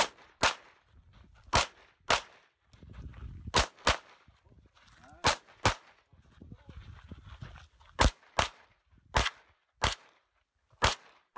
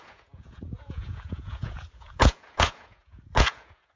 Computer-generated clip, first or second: second